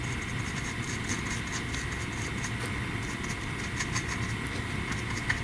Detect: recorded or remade recorded